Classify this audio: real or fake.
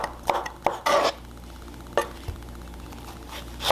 real